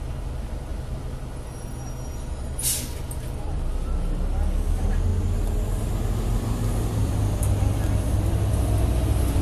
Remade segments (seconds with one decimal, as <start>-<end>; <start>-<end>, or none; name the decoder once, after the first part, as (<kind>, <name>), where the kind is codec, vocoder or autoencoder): none